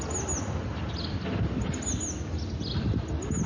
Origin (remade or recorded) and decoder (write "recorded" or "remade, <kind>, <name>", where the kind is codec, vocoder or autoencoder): recorded